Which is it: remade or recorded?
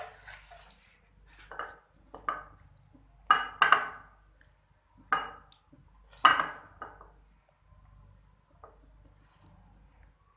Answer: recorded